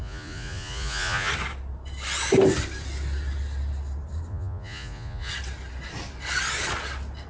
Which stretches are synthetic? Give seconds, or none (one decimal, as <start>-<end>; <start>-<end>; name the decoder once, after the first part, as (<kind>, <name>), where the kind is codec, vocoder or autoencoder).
0.0-1.3 (vocoder, Vocos); 4.3-5.3